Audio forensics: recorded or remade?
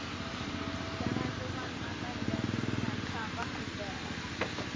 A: recorded